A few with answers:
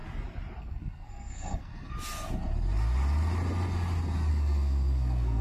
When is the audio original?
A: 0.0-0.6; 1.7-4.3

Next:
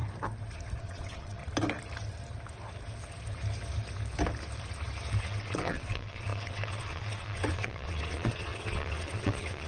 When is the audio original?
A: 0.0-0.8; 1.4-5.2

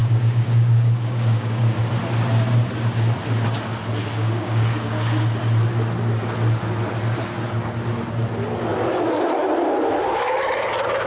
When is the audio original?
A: 1.8-4.0; 4.7-11.1

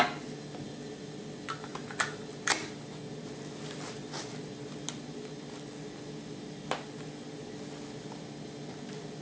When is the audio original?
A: 0.0-9.2